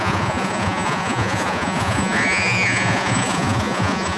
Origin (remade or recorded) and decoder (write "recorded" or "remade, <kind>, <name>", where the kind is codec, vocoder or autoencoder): remade, vocoder, Vocos